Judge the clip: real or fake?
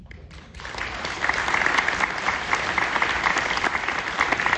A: real